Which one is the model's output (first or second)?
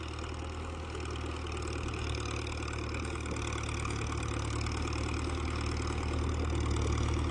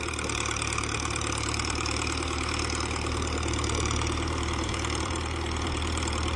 second